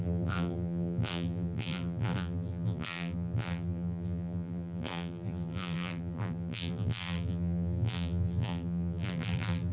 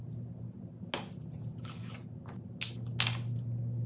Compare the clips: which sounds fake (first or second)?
first